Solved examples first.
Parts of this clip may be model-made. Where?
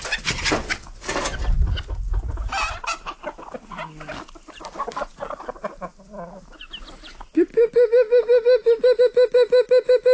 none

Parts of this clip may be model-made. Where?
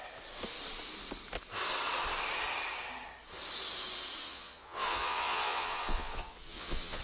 4.2-7.0 (vocoder, Vocos)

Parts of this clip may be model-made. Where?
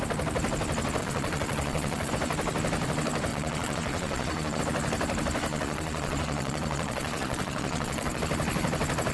1.0-2.1 (vocoder, Vocos); 3.3-4.6; 5.5-8.2